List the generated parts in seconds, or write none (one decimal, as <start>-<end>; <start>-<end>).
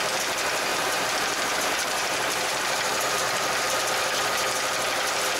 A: 0.7-3.9